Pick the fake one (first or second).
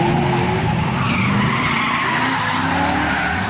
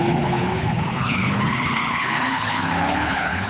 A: second